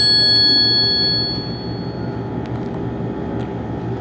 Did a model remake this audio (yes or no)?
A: no